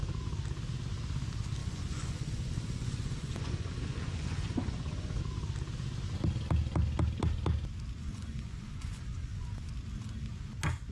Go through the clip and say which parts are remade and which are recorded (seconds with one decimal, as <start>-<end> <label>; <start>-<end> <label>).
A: 0.0-1.6 recorded; 1.6-5.2 remade; 5.2-8.0 recorded; 8.0-9.7 remade; 9.7-10.9 recorded